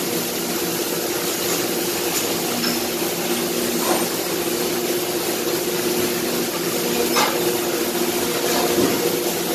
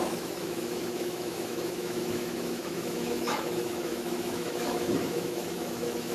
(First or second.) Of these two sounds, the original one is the first